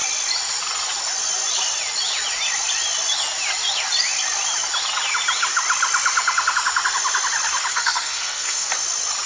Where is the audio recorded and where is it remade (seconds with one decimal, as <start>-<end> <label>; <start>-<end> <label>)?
0.0-7.7 recorded; 7.7-8.7 remade; 8.7-9.3 recorded